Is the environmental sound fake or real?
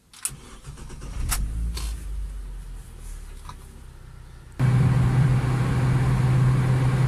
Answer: real